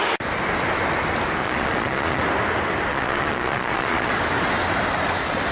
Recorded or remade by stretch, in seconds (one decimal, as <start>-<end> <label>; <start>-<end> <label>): 0.0-1.4 recorded; 1.4-2.2 remade; 2.2-2.9 recorded; 2.9-4.1 remade; 4.1-5.5 recorded